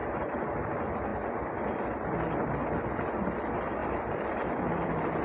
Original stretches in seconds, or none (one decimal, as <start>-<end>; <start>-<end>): 0.7-3.8; 4.5-5.2